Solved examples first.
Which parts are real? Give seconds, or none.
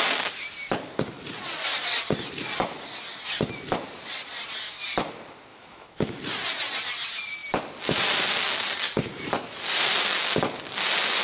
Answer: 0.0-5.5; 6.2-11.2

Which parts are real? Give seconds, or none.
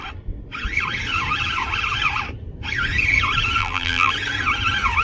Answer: 0.0-3.6; 4.1-5.0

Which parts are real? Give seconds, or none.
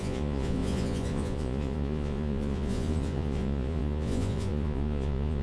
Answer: none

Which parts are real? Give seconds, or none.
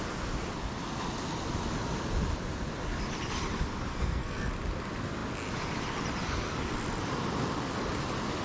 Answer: 0.0-3.9; 4.5-8.4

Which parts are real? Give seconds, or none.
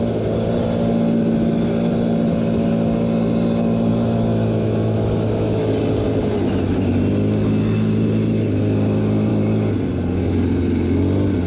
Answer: 0.0-3.9; 5.7-11.5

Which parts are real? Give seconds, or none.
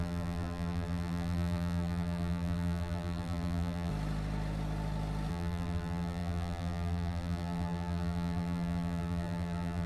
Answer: 3.9-5.3